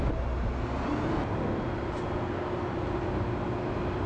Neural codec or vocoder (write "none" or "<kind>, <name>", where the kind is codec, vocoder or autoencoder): none